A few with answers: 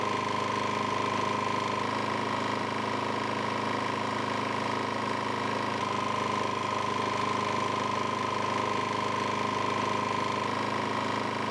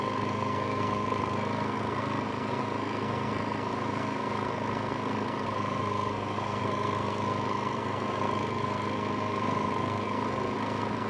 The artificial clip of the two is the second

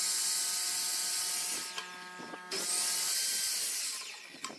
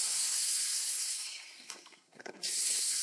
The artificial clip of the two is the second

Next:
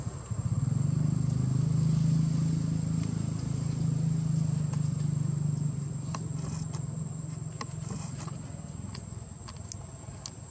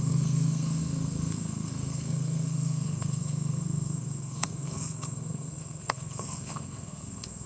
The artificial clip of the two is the second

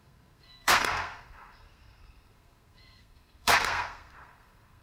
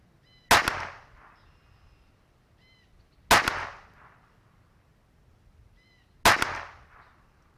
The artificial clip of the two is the first